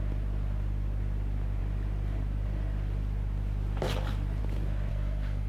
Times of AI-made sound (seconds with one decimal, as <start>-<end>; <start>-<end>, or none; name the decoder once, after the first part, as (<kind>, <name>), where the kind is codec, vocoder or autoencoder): 4.9-5.5 (codec, SNAC)